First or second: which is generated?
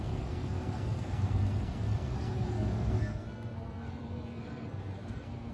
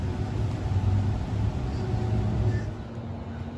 first